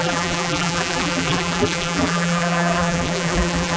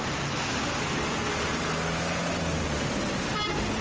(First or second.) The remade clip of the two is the first